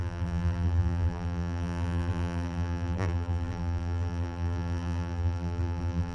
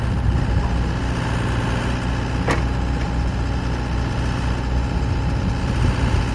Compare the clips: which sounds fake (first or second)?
first